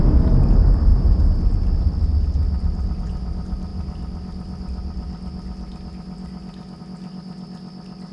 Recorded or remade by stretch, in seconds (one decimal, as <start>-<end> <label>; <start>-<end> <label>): 0.0-8.1 recorded